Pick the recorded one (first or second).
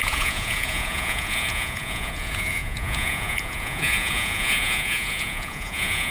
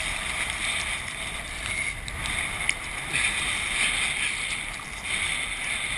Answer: second